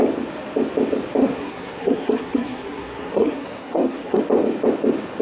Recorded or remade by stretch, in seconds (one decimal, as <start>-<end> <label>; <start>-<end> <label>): 0.0-1.2 recorded; 1.2-4.2 remade; 4.2-5.2 recorded